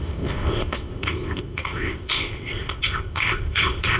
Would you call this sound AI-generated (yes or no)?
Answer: yes